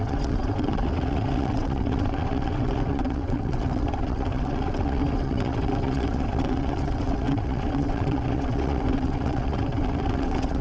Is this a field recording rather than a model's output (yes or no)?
no